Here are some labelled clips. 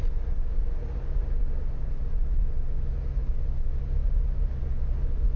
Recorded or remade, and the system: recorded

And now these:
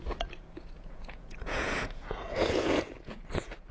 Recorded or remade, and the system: remade, vocoder, Vocos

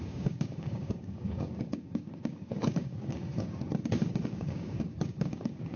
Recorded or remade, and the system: remade, codec, DAC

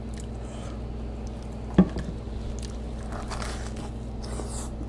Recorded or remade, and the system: recorded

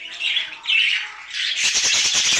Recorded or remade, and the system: recorded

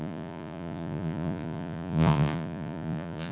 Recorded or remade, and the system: remade, vocoder, Vocos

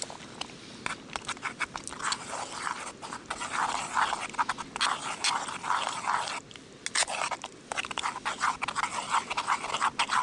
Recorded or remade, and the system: recorded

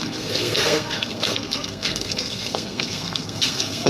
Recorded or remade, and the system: remade, codec, SNAC